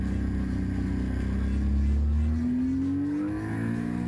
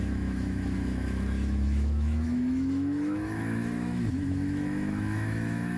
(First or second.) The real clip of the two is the first